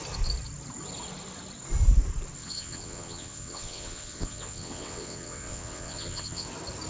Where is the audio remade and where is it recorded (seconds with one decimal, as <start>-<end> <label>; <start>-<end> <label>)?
0.0-2.4 recorded; 2.4-6.5 remade; 6.5-6.9 recorded